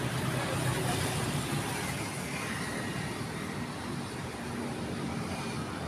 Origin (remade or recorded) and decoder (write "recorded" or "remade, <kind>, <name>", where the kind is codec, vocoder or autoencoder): recorded